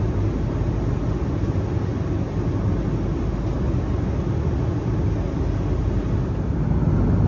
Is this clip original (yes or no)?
yes